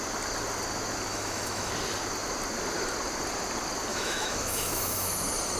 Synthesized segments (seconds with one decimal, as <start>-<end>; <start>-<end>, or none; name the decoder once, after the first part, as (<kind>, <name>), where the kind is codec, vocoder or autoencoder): 1.1-1.7 (autoencoder, DAC-VAE); 3.9-5.1